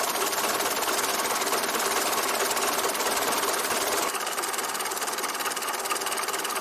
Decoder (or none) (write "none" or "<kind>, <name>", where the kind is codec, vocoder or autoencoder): none